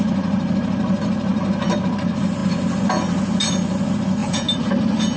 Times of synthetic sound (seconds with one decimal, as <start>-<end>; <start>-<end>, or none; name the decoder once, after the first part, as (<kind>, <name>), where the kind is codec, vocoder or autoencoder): 4.2-4.7 (vocoder, BigVGAN v2)